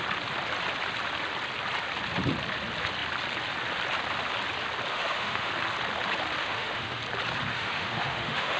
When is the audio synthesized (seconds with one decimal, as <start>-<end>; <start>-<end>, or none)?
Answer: 4.9-5.5; 6.4-7.0; 7.5-8.6